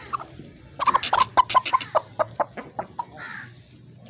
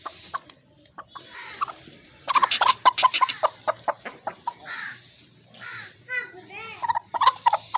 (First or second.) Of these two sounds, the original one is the first